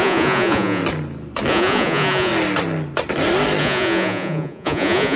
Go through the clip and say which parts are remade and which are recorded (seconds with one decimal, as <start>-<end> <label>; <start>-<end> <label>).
0.0-0.8 remade; 0.8-1.5 recorded; 1.5-2.3 remade; 2.3-3.6 recorded; 3.6-5.2 remade

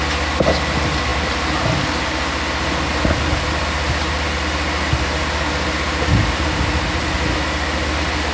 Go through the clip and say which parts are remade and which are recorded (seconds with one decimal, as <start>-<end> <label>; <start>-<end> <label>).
0.0-8.3 recorded

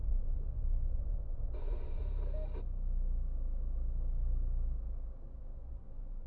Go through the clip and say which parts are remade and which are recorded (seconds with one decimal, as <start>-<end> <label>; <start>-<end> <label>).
0.0-2.0 remade; 2.0-5.6 recorded; 5.6-6.3 remade

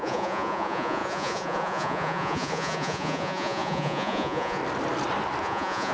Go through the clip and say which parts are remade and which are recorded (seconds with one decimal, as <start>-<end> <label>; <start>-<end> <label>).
0.0-4.6 remade; 4.6-5.4 recorded; 5.4-5.9 remade

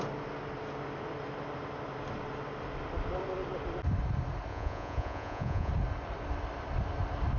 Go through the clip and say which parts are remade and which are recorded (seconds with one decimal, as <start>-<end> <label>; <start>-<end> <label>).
0.0-4.5 recorded; 4.5-5.7 remade; 5.7-7.4 recorded

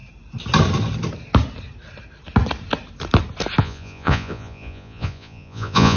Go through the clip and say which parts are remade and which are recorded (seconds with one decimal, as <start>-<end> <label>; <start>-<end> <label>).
0.0-3.6 recorded; 3.6-6.0 remade

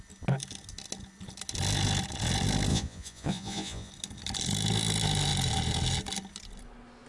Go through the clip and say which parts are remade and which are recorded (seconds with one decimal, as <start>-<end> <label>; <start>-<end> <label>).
0.0-2.7 recorded; 2.7-3.9 remade; 3.9-7.1 recorded